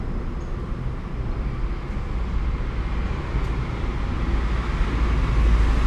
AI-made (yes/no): no